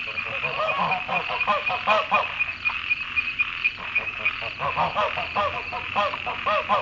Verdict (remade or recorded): recorded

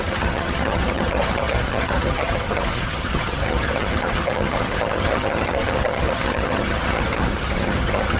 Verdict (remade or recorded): remade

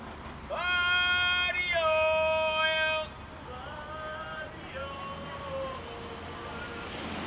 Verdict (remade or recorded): recorded